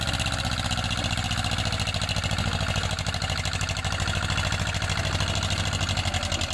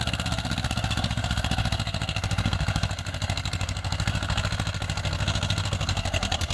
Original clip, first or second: first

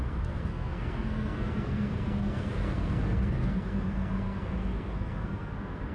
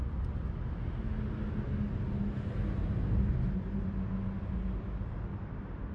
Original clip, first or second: second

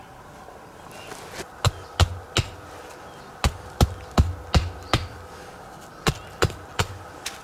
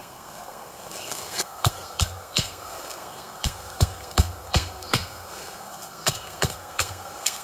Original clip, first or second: first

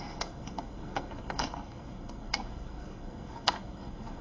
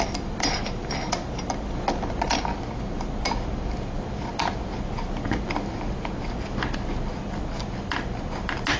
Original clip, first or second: second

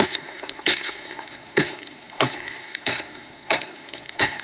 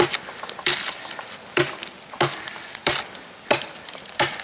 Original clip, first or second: second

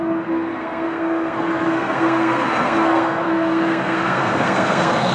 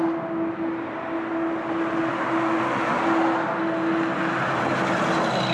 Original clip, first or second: second